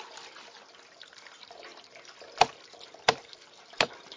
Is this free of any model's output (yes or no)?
yes